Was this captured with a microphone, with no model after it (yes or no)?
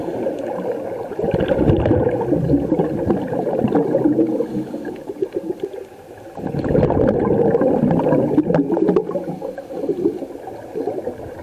yes